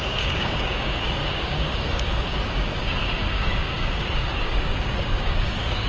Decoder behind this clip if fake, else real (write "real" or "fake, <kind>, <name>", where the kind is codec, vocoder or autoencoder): fake, codec, DAC